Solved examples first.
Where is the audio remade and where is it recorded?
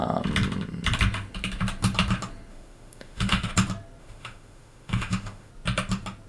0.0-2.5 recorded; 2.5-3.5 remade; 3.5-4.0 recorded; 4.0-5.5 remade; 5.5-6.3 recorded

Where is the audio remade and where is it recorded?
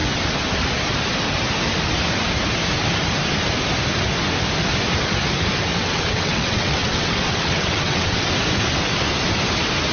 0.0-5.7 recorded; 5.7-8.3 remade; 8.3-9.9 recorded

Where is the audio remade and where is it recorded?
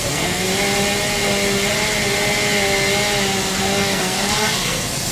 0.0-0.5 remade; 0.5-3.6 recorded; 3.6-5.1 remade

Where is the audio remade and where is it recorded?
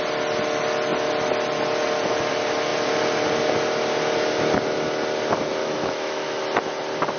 0.0-5.6 recorded; 5.6-6.4 remade; 6.4-7.2 recorded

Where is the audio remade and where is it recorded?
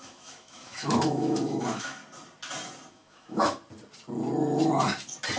0.0-2.0 remade; 2.0-2.9 recorded; 2.9-3.6 remade; 3.6-5.4 recorded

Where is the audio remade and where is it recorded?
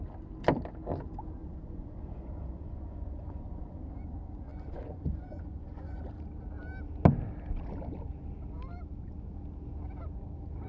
0.0-1.4 recorded; 1.4-3.8 remade; 3.8-4.5 recorded; 4.5-6.0 remade; 6.0-10.7 recorded